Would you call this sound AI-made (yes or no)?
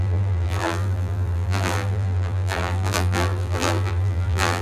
yes